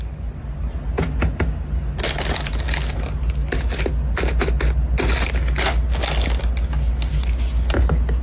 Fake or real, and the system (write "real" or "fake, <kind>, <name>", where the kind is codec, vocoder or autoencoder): real